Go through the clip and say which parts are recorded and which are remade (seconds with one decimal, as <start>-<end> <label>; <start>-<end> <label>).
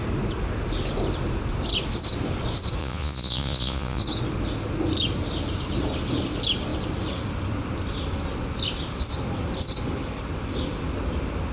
0.0-2.8 recorded; 2.8-4.0 remade; 4.0-11.5 recorded